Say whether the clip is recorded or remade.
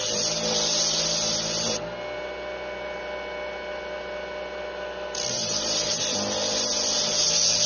recorded